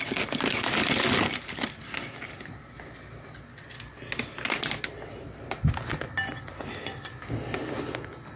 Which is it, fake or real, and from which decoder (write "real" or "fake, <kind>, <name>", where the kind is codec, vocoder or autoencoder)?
real